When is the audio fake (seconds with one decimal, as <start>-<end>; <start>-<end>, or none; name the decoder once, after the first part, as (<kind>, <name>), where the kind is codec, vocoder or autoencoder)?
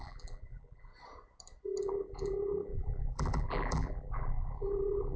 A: 0.0-0.9 (vocoder, BigVGAN v2); 1.8-5.2